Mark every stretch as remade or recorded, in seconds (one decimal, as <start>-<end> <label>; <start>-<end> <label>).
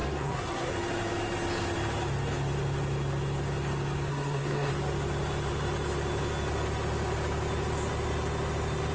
0.0-0.7 remade; 0.7-4.1 recorded; 4.1-4.7 remade; 4.7-8.9 recorded